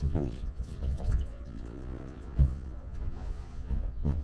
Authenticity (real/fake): fake